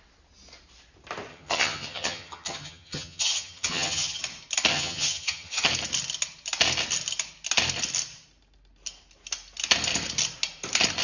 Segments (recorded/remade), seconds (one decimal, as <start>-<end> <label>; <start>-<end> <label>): 0.0-1.3 recorded; 1.3-4.2 remade; 4.2-4.7 recorded; 4.7-5.7 remade; 5.7-11.0 recorded